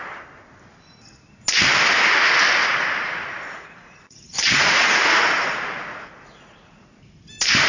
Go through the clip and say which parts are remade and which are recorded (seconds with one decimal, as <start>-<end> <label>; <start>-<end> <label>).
0.0-2.6 recorded; 2.6-7.0 remade; 7.0-7.7 recorded